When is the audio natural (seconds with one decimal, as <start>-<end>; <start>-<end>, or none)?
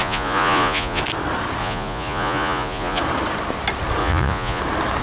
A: 1.0-1.6; 3.0-4.0; 4.6-5.0